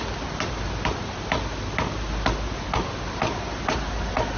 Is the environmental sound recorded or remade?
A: recorded